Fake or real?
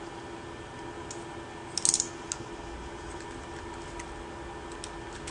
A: real